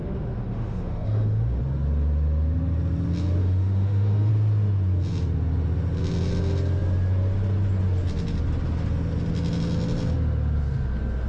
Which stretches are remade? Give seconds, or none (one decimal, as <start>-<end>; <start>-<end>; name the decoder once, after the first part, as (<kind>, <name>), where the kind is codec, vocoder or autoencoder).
0.0-1.6 (autoencoder, DAC-VAE); 3.4-4.3